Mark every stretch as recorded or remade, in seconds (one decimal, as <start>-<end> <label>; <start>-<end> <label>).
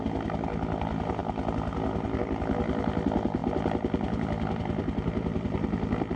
0.0-3.4 recorded; 3.4-6.2 remade